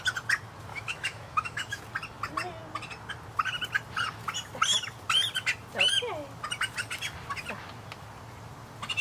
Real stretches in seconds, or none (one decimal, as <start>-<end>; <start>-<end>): 0.0-0.7; 1.8-9.0